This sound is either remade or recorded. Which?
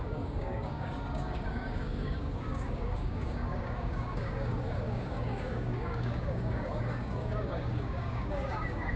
remade